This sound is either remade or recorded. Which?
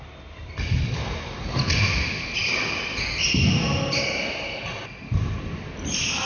recorded